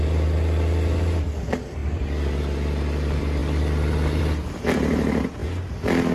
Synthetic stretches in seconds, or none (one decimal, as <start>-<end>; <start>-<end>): none